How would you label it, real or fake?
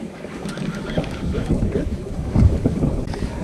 fake